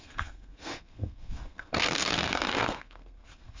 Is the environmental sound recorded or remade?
remade